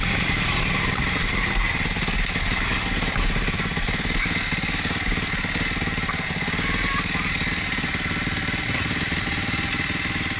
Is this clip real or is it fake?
real